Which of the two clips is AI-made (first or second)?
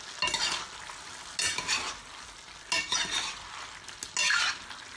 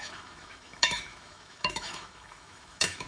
second